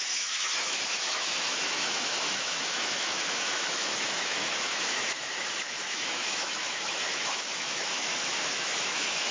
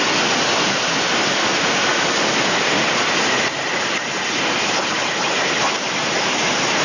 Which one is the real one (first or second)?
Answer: second